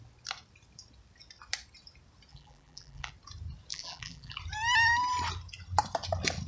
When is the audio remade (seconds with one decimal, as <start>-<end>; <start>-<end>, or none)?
2.3-3.1; 3.7-4.4